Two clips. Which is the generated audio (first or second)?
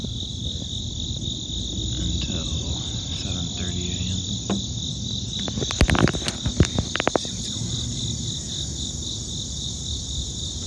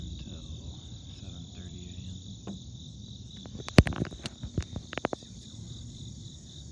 second